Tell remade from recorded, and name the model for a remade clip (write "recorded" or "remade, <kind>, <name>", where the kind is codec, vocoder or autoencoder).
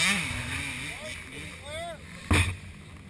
recorded